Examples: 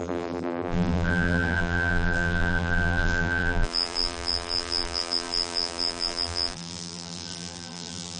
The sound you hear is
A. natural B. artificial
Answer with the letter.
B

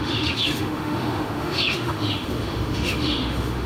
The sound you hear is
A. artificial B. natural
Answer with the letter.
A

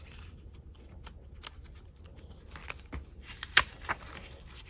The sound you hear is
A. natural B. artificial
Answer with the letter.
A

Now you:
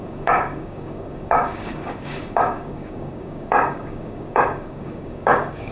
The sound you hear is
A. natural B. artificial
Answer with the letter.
B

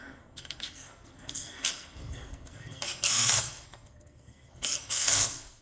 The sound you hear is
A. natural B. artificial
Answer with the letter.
B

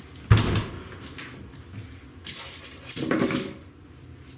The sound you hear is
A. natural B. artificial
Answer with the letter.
A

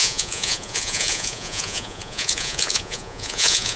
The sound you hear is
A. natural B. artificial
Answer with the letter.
B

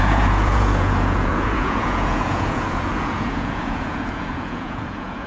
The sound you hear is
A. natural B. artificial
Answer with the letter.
B